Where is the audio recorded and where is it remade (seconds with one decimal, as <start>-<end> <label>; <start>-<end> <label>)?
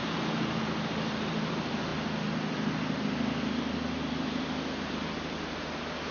0.0-6.1 recorded